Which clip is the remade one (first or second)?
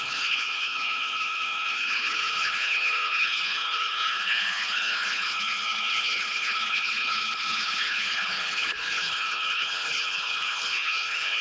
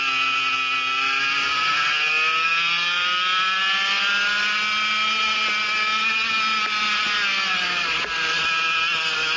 first